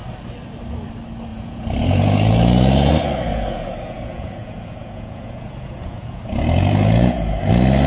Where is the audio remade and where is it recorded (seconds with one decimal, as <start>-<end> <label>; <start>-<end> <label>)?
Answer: 0.0-1.3 recorded; 1.3-2.9 remade; 2.9-3.3 recorded; 3.3-7.5 remade; 7.5-7.9 recorded